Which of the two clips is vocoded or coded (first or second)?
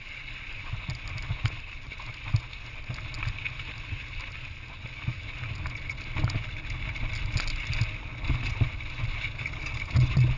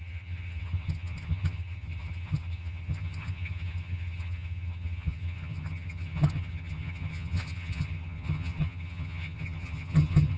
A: second